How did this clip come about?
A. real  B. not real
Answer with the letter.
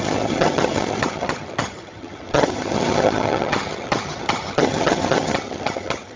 B